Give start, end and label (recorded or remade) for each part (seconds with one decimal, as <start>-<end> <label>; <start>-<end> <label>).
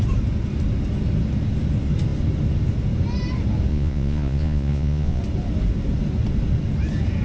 0.0-3.7 recorded; 3.7-5.2 remade; 5.2-7.2 recorded